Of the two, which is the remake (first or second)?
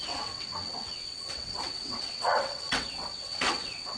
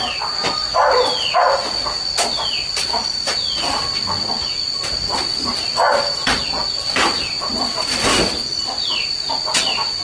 first